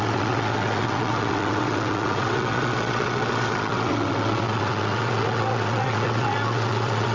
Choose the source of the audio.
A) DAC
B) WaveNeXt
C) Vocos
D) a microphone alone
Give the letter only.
B